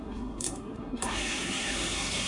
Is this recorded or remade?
remade